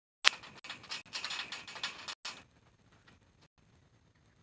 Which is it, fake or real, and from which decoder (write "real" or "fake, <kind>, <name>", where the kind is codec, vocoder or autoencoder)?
real